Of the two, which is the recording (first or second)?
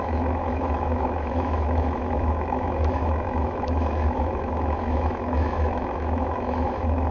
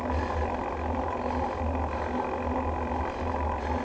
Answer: second